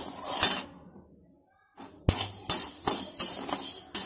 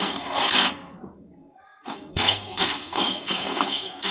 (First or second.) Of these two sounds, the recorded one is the first